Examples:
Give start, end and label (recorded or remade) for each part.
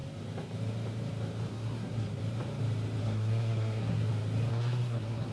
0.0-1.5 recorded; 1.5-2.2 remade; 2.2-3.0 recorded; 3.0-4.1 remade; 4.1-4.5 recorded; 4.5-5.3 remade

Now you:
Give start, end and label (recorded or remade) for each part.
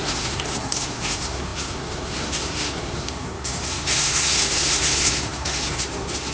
0.0-6.3 remade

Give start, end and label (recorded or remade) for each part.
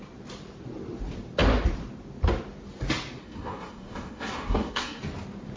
0.0-3.2 recorded; 3.2-5.0 remade; 5.0-5.6 recorded